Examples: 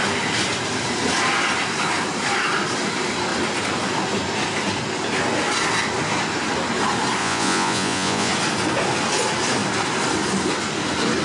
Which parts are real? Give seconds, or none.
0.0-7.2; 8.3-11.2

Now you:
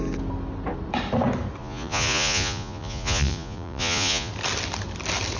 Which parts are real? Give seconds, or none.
0.0-1.6; 4.3-5.4

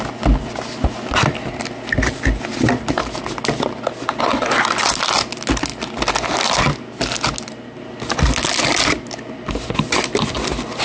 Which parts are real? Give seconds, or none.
0.0-10.8

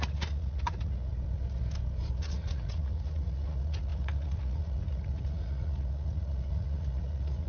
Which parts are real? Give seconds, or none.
1.1-2.2

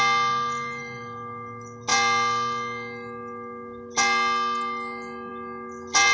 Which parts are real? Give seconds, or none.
0.0-6.1

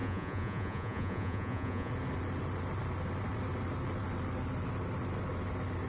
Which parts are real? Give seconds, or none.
1.9-5.9

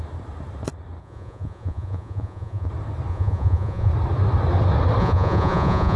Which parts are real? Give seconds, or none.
0.0-1.0; 2.7-3.1; 3.9-5.0